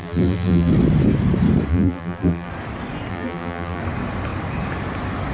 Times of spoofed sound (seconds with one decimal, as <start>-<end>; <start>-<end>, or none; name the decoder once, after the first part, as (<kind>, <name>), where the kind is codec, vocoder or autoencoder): 0.0-0.7 (vocoder, BigVGAN v2); 1.7-2.5; 3.1-3.8